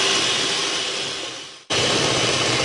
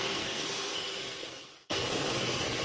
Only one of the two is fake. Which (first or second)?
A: second